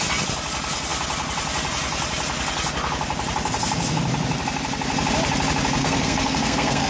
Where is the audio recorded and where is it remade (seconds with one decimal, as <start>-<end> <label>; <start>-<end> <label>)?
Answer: 0.0-5.8 recorded; 5.8-6.9 remade